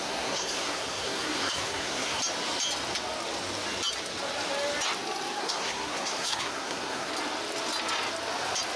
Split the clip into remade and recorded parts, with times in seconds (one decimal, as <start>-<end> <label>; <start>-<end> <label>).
0.0-2.2 remade; 2.2-5.4 recorded; 5.4-7.1 remade; 7.1-8.8 recorded